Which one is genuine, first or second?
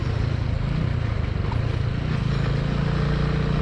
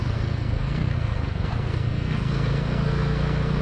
first